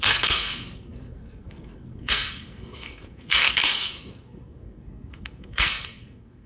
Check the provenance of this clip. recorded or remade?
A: remade